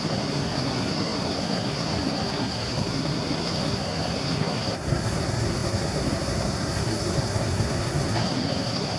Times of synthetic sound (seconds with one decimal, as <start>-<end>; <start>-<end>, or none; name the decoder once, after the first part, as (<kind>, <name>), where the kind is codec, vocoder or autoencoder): 0.0-9.0 (codec, SNAC)